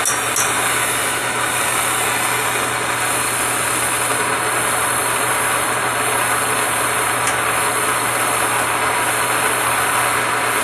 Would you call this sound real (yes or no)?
yes